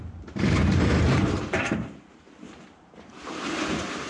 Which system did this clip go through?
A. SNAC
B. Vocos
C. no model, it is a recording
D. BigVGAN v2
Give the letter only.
D